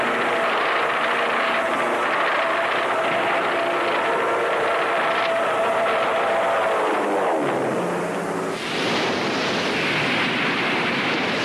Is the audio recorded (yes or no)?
yes